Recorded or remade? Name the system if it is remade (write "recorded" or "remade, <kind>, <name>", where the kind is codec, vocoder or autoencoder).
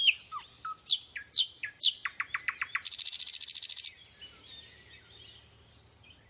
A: recorded